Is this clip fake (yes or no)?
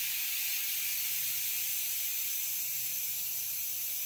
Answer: yes